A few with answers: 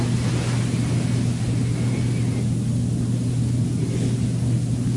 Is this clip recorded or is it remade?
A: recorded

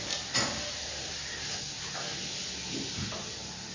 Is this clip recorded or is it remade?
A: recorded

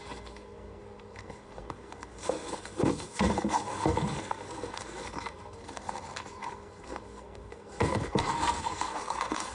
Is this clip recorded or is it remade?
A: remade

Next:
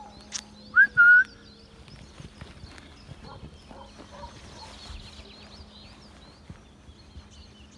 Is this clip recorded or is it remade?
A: recorded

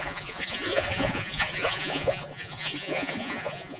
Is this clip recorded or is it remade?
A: remade